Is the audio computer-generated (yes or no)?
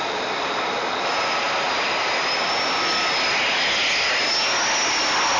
no